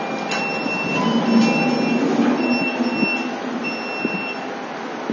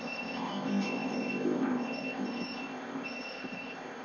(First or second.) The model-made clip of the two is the second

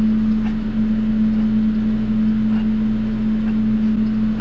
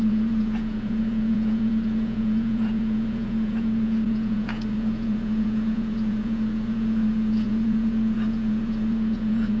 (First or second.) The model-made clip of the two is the second